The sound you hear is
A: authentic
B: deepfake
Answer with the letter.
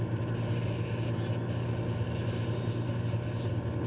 A